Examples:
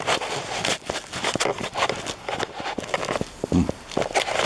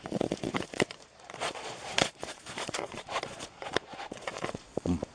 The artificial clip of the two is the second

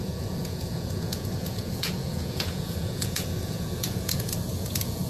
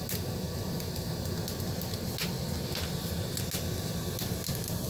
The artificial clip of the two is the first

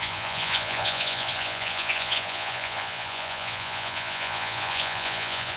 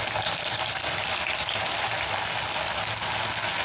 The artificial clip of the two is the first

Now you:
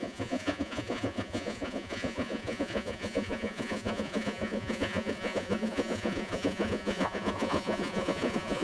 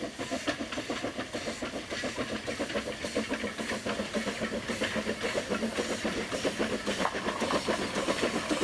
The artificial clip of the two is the first